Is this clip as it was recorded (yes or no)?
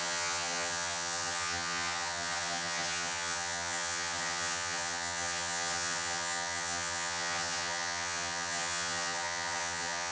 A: no